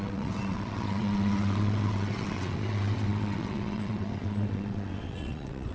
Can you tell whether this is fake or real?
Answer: fake